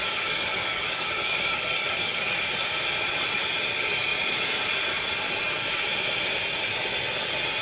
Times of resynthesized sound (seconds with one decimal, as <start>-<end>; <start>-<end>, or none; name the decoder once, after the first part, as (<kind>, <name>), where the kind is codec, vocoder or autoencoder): 0.0-2.4 (codec, DAC)